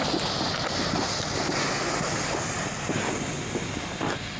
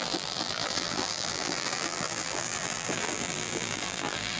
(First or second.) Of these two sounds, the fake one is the second